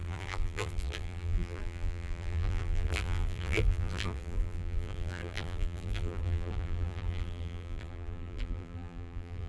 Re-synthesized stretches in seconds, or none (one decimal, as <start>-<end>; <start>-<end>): 0.0-9.5